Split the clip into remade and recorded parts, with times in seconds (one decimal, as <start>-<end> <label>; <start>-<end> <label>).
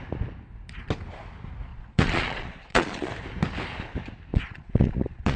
0.0-1.7 recorded; 1.7-3.1 remade; 3.1-4.3 recorded; 4.3-5.4 remade